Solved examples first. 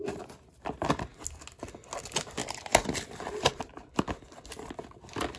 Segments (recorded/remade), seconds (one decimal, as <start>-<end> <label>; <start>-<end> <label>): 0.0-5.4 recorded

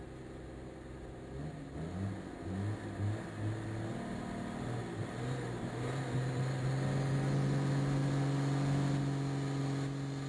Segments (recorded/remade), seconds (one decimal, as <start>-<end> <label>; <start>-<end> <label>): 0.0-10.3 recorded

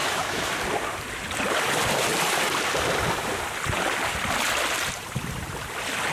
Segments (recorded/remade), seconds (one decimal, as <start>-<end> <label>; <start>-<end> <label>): 0.0-0.5 remade; 0.5-6.1 recorded